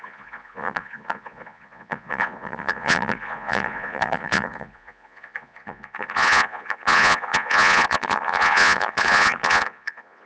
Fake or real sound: fake